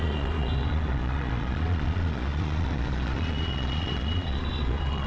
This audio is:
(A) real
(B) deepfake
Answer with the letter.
B